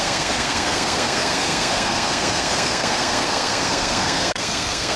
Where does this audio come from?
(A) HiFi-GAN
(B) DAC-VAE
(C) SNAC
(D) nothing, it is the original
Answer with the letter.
C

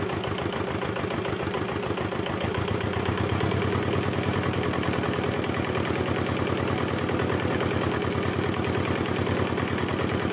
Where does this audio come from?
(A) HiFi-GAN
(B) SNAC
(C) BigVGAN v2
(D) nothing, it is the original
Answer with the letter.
D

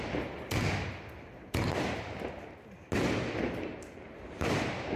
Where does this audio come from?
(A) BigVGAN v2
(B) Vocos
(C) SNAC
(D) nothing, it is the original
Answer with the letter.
D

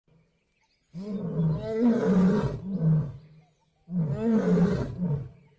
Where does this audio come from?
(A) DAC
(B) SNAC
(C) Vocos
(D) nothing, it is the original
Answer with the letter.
D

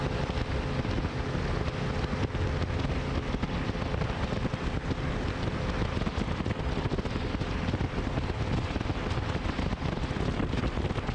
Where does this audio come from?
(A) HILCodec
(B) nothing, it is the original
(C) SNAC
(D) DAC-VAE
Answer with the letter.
B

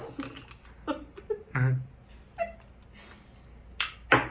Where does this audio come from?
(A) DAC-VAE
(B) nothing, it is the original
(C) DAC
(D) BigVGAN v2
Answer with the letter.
B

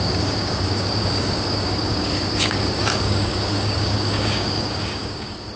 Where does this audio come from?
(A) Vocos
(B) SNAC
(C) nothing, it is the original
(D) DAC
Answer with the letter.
D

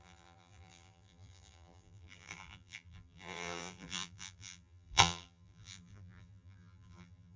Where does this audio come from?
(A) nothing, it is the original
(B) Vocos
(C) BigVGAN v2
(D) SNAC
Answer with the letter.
C